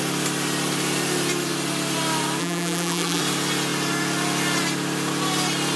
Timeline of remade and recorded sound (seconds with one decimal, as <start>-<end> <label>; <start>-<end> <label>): 0.0-2.4 recorded; 2.4-3.2 remade; 3.2-5.8 recorded